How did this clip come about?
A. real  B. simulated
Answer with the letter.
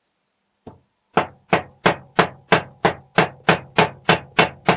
A